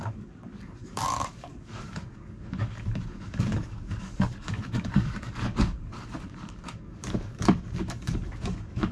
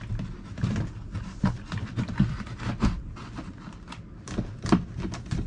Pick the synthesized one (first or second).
first